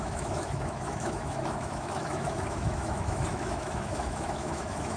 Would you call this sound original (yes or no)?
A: no